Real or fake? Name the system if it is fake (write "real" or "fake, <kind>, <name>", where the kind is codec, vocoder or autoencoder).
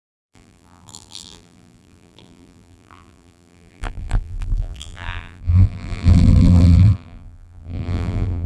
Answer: fake, vocoder, BigVGAN v2